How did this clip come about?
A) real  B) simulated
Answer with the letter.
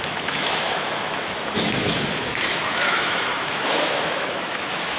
B